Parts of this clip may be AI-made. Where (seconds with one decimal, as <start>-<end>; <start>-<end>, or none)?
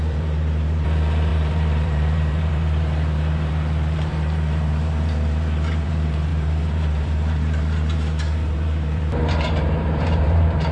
0.0-10.7